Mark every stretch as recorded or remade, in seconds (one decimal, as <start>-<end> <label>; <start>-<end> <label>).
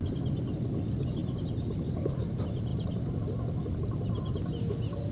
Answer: 0.0-2.7 recorded; 2.7-5.1 remade